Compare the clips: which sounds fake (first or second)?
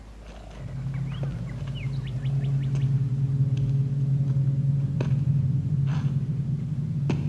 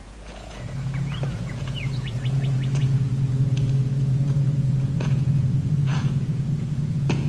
second